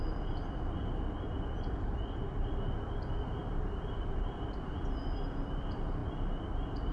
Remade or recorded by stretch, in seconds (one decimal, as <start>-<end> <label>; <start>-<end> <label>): 0.0-3.4 recorded; 3.4-4.8 remade; 4.8-6.9 recorded